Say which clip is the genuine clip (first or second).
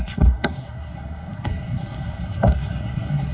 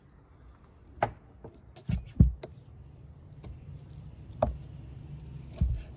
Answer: second